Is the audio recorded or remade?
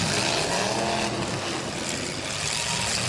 recorded